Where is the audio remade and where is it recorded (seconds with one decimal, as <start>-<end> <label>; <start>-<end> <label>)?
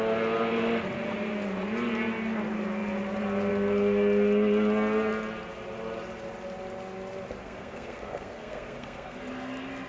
0.0-7.4 recorded; 7.4-9.2 remade; 9.2-9.9 recorded